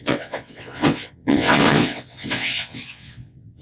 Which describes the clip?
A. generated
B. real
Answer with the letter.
A